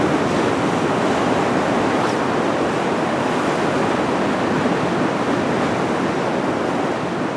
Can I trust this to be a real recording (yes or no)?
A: yes